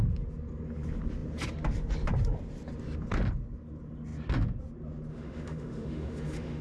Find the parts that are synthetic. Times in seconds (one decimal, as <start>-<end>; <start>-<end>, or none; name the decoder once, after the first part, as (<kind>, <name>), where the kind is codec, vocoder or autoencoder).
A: 5.1-6.6 (autoencoder, DAC-VAE)